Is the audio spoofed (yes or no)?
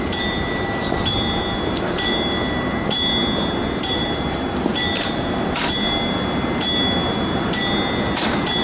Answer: no